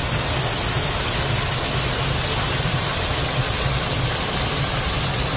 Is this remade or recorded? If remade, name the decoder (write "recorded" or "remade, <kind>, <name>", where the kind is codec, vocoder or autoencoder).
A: recorded